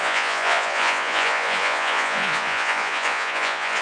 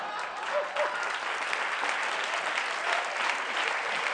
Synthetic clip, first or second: first